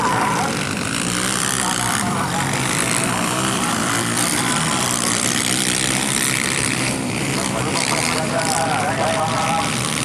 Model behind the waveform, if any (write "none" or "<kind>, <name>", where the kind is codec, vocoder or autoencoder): vocoder, BigVGAN v2